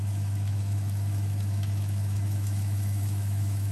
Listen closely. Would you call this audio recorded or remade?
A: remade